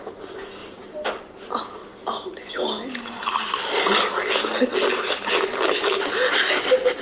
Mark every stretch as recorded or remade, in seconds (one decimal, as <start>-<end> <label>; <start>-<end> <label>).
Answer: 0.0-0.6 recorded; 0.6-1.1 remade; 1.1-7.0 recorded